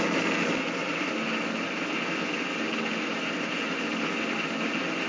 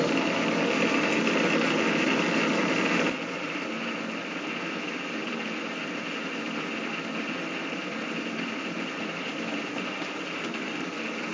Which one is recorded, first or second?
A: first